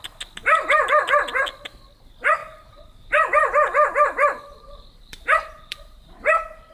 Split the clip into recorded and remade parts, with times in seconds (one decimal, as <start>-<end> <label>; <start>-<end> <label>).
0.0-0.4 recorded; 0.4-1.0 remade; 1.0-2.4 recorded; 2.4-6.7 remade